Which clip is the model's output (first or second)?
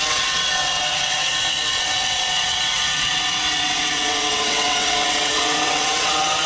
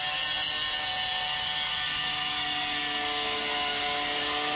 first